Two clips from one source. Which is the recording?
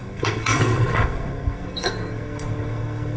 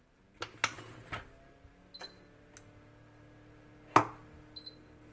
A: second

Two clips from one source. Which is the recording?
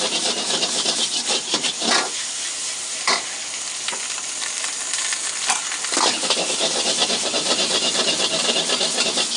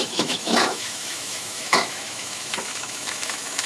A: first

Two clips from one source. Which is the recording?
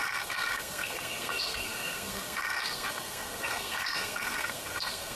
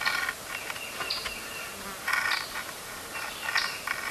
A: second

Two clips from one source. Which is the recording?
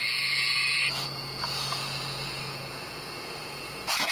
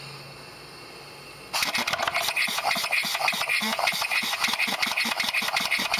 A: second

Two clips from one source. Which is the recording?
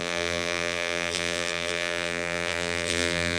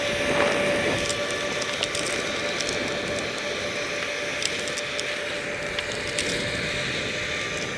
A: second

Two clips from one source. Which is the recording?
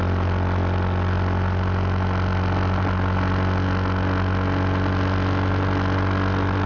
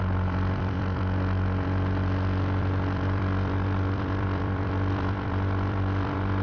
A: first